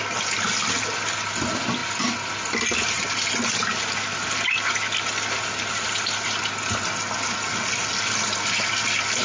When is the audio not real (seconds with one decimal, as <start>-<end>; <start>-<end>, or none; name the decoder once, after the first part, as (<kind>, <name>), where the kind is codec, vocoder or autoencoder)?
none